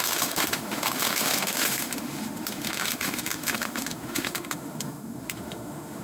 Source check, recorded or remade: remade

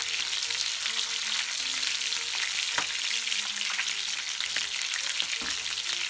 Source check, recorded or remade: recorded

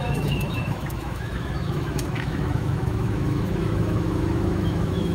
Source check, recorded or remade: remade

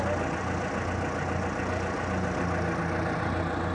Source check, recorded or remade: recorded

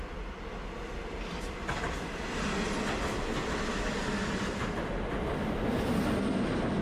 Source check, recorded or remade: recorded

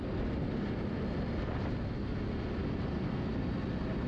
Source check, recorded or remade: recorded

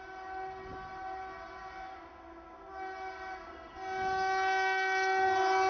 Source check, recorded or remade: recorded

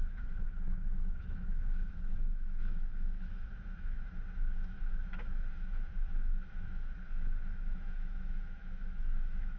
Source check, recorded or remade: remade